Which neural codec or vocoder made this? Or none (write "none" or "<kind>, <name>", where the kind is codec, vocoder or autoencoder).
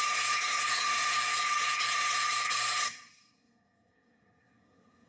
codec, SNAC